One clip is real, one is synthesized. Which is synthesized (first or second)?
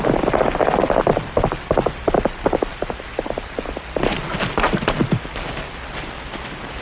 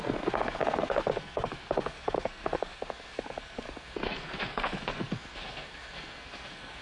second